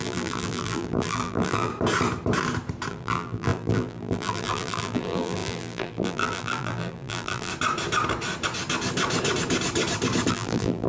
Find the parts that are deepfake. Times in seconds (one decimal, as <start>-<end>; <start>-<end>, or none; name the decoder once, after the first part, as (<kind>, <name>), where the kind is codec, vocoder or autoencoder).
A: 0.0-1.7 (vocoder, BigVGAN v2); 2.9-7.5; 10.3-10.9